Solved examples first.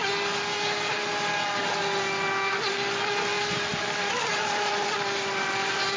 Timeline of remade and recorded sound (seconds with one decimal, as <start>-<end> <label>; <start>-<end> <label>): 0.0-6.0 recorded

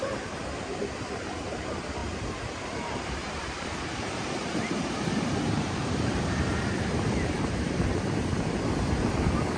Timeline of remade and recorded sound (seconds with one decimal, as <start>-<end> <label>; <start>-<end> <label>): 0.0-9.6 remade

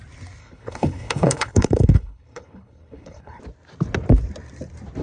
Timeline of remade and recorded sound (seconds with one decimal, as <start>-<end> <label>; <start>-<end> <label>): 0.0-0.4 recorded; 0.4-3.4 remade; 3.4-5.0 recorded